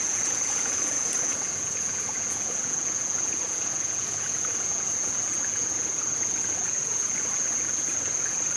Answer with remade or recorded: remade